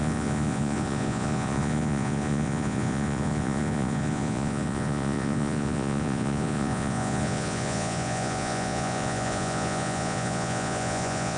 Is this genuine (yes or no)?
no